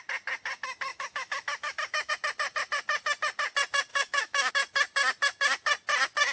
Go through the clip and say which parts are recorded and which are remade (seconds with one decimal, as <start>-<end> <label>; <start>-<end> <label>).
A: 0.0-0.9 recorded; 0.9-2.1 remade; 2.1-3.9 recorded; 3.9-4.5 remade; 4.5-6.3 recorded